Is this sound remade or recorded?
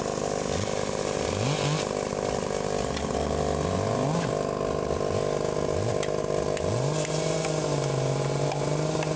recorded